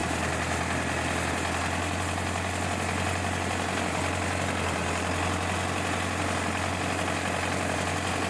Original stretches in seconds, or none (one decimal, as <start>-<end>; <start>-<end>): 0.0-8.3